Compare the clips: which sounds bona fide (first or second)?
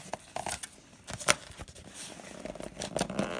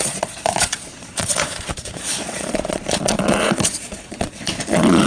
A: first